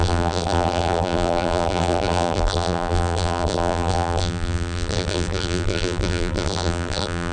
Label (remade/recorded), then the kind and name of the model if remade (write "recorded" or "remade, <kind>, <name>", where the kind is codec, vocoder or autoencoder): remade, vocoder, BigVGAN v2